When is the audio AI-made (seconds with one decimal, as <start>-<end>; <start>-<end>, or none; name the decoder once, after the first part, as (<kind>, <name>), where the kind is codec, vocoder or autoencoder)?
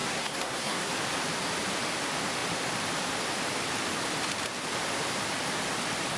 0.0-0.9 (codec, SNAC)